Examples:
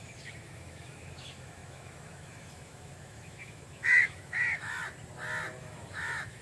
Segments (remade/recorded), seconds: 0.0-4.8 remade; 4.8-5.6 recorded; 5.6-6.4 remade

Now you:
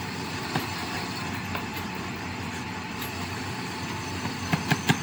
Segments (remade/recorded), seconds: 0.0-5.0 recorded